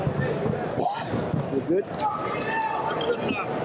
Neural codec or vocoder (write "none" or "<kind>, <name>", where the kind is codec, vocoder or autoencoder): none